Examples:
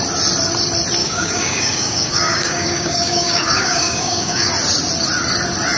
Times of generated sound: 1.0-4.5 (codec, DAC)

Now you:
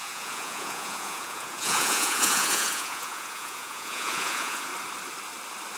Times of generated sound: 0.0-4.7 (vocoder, Vocos)

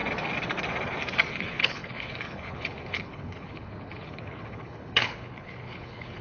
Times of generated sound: 1.3-6.2 (codec, HILCodec)

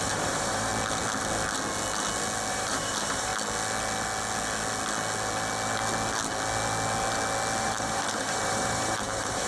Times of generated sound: 0.0-0.7 (vocoder, BigVGAN v2); 2.5-3.3; 7.6-9.5